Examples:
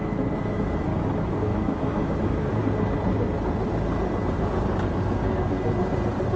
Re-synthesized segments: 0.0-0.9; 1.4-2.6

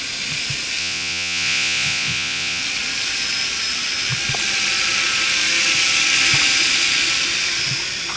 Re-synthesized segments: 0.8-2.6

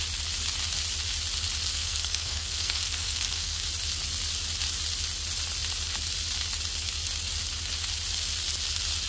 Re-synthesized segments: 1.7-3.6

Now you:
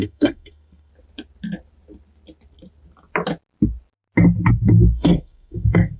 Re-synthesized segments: 0.0-0.9; 4.5-6.0